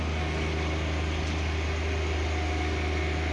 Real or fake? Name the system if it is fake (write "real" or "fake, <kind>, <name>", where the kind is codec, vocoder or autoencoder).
real